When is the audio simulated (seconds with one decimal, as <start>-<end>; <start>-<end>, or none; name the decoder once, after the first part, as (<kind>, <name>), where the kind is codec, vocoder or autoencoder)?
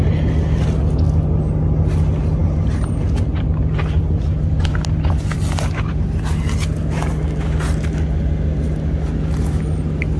none